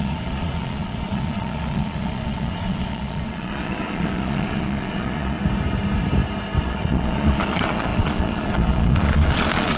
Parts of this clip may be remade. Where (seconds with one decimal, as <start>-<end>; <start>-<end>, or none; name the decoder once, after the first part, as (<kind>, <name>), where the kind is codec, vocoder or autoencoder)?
0.0-5.4 (vocoder, Vocos); 6.6-9.8